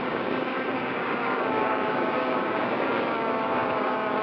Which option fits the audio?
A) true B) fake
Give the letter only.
B